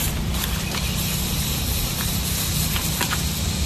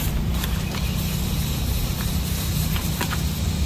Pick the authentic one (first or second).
second